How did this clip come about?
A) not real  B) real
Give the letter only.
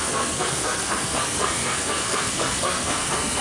A